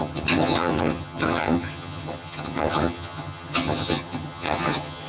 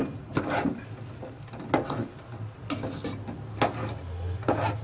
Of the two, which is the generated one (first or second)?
first